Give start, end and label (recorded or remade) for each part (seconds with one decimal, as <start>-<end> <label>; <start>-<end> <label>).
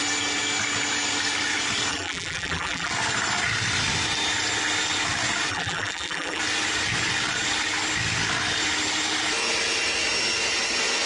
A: 0.0-1.9 recorded; 1.9-2.9 remade; 2.9-5.5 recorded; 5.5-6.4 remade; 6.4-11.1 recorded